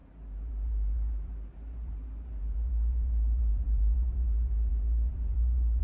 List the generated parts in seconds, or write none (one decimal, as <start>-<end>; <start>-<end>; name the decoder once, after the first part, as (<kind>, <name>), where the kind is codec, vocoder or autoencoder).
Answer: 0.0-5.8 (vocoder, BigVGAN v2)